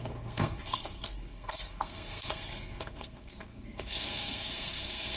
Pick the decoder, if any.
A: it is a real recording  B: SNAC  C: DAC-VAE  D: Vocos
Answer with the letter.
B